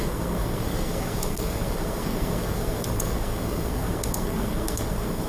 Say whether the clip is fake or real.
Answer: fake